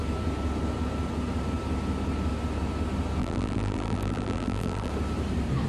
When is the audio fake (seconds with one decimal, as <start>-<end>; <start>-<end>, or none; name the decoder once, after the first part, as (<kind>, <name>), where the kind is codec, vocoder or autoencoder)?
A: 3.2-4.9 (vocoder, BigVGAN v2)